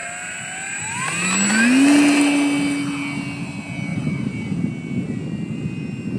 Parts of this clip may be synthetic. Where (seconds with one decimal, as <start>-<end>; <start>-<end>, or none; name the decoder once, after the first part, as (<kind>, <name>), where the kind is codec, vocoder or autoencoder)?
3.9-4.7 (vocoder, BigVGAN v2)